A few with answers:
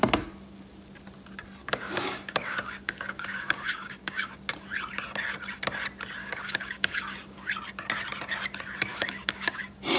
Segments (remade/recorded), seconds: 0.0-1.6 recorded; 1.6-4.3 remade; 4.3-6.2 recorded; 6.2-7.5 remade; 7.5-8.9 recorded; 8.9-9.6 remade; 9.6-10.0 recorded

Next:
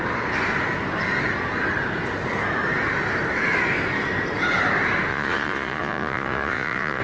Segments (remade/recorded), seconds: 0.0-5.1 recorded; 5.1-7.0 remade